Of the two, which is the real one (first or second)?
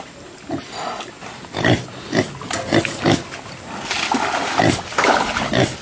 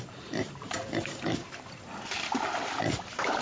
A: first